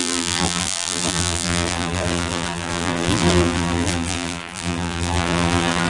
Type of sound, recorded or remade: remade